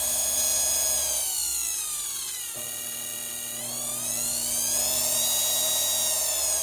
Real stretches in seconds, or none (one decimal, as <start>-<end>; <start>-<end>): 0.0-6.6